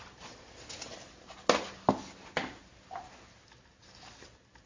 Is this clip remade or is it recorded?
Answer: recorded